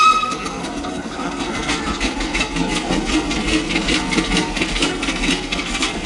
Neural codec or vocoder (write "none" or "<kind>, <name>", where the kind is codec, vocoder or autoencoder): codec, SNAC